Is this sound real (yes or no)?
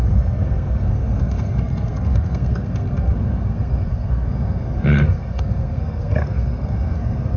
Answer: no